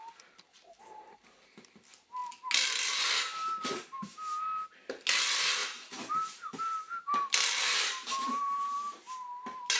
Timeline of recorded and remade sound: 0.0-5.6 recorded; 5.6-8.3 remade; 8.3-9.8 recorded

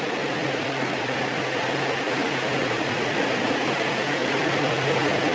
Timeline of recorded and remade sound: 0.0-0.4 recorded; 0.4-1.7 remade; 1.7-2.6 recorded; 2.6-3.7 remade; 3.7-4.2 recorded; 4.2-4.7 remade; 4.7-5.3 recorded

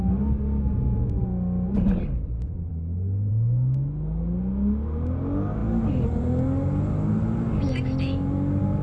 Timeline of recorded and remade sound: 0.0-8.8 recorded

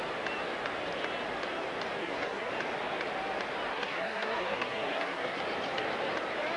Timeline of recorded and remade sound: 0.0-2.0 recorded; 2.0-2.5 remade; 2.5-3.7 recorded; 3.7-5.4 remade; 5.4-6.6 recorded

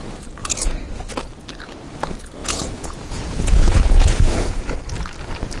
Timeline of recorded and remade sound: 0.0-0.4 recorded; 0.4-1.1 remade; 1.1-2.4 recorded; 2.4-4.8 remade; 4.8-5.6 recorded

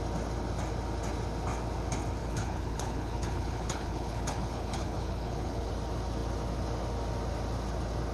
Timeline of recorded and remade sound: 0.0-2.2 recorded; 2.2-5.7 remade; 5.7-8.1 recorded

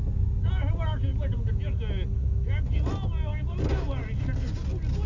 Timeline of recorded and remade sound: 0.0-5.1 recorded

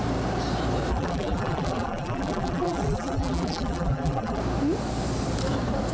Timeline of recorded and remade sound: 0.0-0.9 recorded; 0.9-4.4 remade; 4.4-5.9 recorded